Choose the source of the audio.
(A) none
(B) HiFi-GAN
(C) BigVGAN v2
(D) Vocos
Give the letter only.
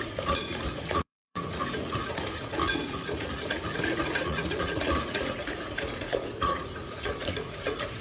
D